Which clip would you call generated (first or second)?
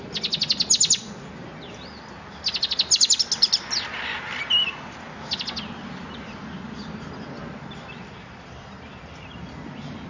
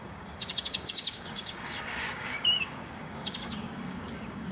second